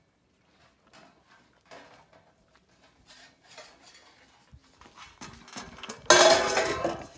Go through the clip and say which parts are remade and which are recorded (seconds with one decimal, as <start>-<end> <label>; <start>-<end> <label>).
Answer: 0.0-7.2 recorded